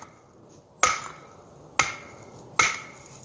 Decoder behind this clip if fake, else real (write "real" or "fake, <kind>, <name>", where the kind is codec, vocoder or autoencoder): real